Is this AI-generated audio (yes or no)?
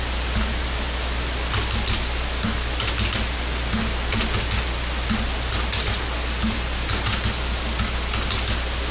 no